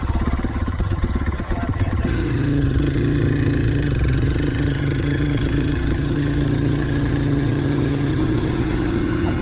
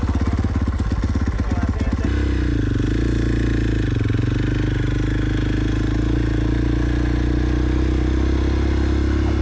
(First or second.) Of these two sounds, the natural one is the second